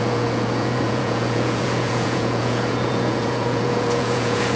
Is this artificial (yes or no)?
yes